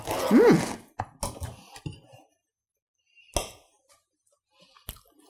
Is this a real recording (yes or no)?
yes